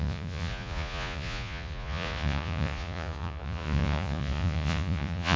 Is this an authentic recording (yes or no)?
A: no